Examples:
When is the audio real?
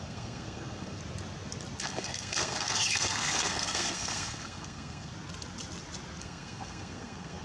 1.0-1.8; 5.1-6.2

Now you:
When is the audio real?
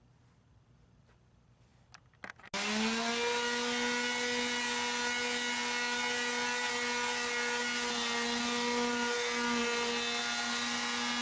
0.0-11.2